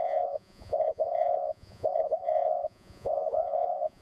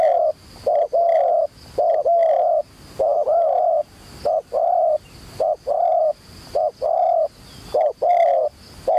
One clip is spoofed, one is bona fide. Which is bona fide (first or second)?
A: second